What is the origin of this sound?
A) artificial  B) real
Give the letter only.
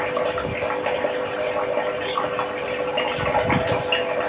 B